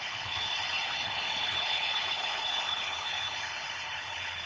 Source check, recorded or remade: remade